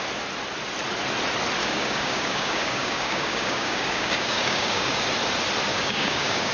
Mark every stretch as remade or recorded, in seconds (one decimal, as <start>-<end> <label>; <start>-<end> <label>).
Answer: 0.0-1.6 recorded; 1.6-5.0 remade; 5.0-5.7 recorded; 5.7-6.5 remade